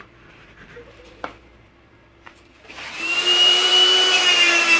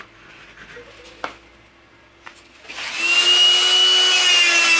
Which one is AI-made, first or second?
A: first